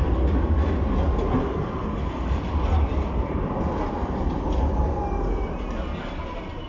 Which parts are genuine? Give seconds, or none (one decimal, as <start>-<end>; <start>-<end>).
0.0-6.7